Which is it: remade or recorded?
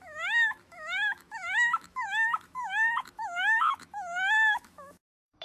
remade